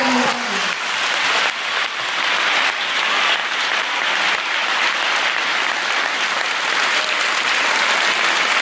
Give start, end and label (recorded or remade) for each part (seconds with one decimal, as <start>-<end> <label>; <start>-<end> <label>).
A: 0.0-8.6 recorded